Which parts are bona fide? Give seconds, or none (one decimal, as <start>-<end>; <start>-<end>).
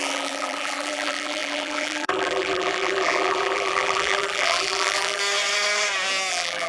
5.2-6.3